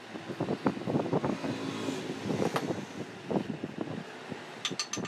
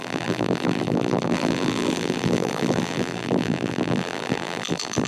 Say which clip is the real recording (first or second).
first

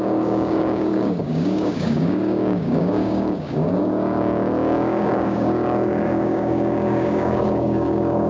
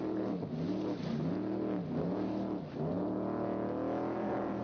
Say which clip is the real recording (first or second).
second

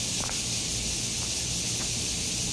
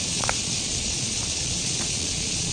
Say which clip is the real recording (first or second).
first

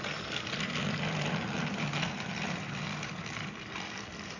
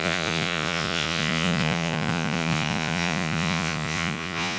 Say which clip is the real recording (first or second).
first